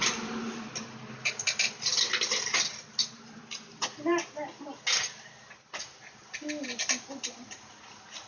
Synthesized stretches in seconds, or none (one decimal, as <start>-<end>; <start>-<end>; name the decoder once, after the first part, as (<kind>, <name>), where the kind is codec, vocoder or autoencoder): none